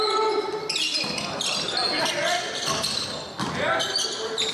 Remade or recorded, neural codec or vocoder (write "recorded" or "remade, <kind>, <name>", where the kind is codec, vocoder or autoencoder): recorded